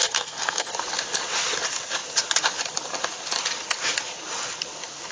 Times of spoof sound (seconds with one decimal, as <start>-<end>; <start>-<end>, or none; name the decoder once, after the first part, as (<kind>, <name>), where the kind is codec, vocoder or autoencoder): 0.0-0.7 (codec, SNAC)